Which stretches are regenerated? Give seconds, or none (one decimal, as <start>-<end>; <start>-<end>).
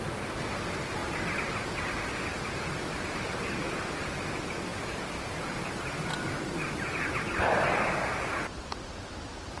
none